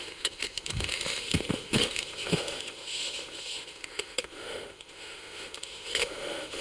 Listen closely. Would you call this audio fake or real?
fake